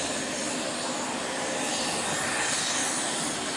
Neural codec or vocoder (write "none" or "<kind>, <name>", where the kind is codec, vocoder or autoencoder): none